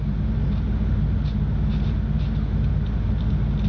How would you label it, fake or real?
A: real